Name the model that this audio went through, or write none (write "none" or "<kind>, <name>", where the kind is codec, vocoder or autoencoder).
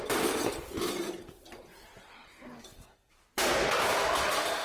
vocoder, BigVGAN v2